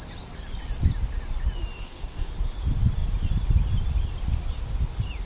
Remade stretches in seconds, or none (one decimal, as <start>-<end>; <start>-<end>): 1.8-2.3